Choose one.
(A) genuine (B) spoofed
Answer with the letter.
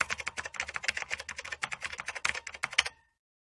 A